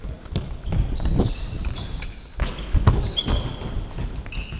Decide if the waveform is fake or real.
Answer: real